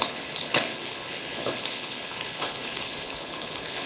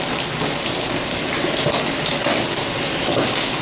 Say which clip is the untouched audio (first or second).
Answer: second